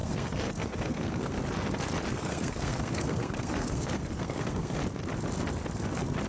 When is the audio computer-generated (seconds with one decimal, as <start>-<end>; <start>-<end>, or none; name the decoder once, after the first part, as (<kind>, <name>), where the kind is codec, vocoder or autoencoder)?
0.0-1.4 (codec, SNAC); 2.1-4.8